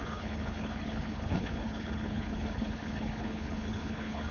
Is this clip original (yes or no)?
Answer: no